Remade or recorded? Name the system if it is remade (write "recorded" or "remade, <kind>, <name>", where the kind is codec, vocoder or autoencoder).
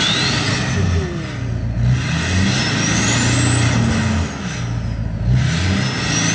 recorded